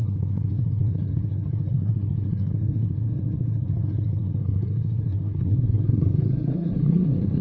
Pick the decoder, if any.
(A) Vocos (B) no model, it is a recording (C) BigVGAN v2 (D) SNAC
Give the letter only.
D